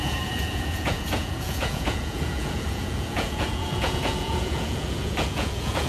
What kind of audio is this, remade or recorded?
remade